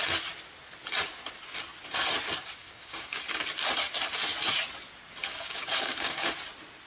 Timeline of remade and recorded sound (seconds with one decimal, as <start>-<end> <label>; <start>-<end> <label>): 0.0-2.6 recorded; 2.6-3.2 remade; 3.2-5.2 recorded; 5.2-6.3 remade; 6.3-6.9 recorded